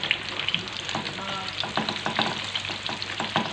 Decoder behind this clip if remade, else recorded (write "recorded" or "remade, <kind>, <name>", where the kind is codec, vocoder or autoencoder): recorded